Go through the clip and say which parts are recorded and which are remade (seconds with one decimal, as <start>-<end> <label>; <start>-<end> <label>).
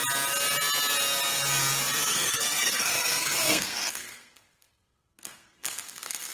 0.0-2.1 recorded; 2.1-6.3 remade